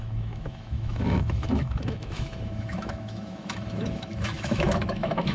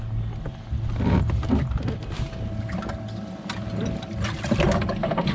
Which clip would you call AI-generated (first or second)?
first